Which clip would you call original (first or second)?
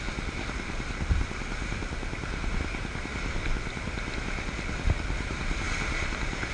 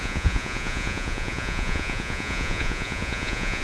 first